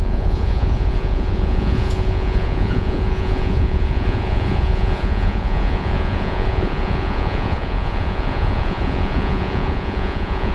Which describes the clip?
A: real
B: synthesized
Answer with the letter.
B